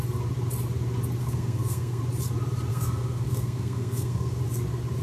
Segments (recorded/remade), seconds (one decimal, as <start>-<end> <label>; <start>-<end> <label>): 0.0-1.2 recorded; 1.2-2.0 remade; 2.0-2.7 recorded; 2.7-4.4 remade; 4.4-5.0 recorded